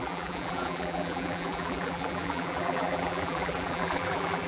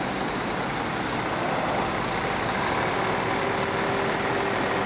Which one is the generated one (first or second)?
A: first